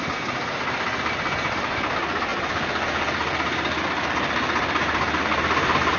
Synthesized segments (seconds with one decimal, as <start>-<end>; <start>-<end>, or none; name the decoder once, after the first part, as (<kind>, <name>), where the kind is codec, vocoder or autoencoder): 0.0-2.3 (vocoder, BigVGAN v2); 5.2-6.0